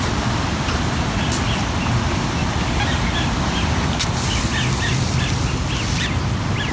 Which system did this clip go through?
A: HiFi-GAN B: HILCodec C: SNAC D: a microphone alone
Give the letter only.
D